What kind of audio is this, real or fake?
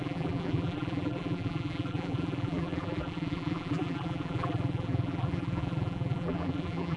fake